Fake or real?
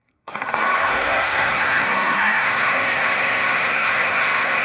fake